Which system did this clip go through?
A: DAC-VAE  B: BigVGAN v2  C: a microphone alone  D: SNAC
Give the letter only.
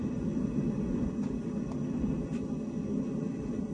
C